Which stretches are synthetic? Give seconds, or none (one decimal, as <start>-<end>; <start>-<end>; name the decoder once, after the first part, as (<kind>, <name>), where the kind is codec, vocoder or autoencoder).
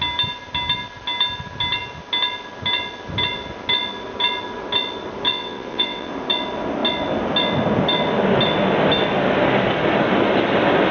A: 5.3-6.1 (vocoder, WaveNeXt)